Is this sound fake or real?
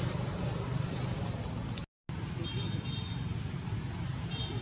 real